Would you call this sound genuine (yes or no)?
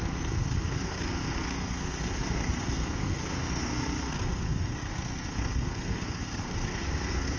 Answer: no